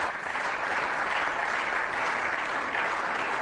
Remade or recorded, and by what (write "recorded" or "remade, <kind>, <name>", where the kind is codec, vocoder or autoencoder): recorded